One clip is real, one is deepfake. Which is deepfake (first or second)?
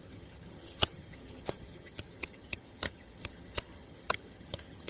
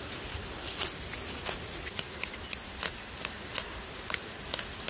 first